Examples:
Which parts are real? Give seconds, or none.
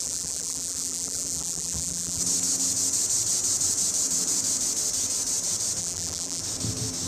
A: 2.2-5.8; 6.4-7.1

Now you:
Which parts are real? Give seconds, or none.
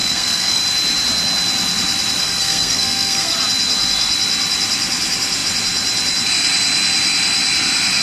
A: 0.6-2.2; 3.3-8.0